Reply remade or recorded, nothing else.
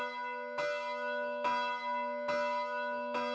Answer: recorded